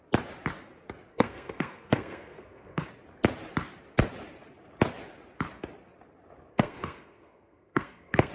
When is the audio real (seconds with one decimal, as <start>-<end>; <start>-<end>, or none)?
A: 0.0-1.1; 2.9-6.5